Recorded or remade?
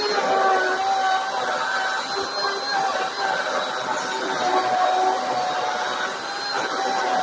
recorded